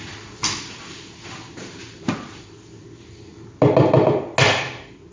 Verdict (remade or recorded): recorded